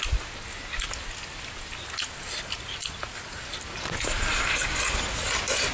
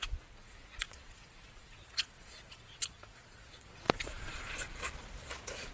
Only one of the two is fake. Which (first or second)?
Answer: second